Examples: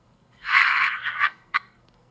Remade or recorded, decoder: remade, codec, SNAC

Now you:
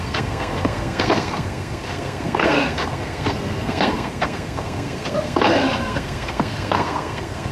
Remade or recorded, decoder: remade, codec, SNAC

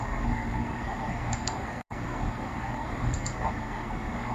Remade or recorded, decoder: remade, codec, SNAC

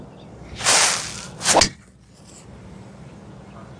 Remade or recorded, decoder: recorded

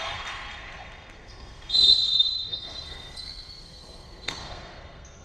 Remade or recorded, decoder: remade, codec, SNAC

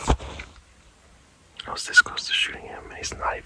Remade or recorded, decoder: recorded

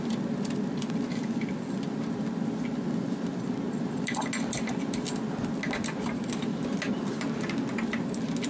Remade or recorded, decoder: recorded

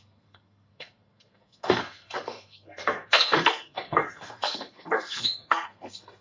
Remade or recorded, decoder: remade, codec, SNAC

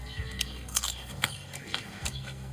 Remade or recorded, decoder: remade, codec, SNAC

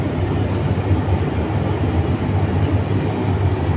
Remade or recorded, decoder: recorded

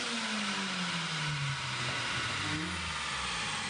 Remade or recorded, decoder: recorded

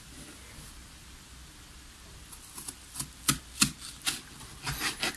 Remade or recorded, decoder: recorded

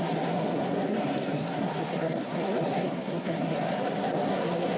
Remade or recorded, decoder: remade, codec, SNAC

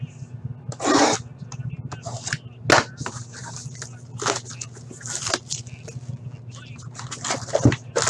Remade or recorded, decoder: recorded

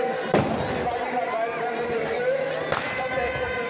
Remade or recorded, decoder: recorded